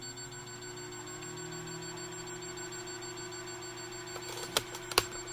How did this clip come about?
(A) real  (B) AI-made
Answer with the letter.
A